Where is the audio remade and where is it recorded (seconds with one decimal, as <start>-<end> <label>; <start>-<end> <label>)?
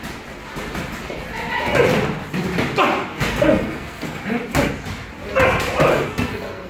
0.0-3.1 recorded; 3.1-4.2 remade; 4.2-5.9 recorded; 5.9-6.7 remade